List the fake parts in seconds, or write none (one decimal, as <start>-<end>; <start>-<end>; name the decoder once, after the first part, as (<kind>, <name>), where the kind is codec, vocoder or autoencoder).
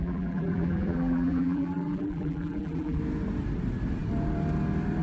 0.0-3.0 (vocoder, BigVGAN v2)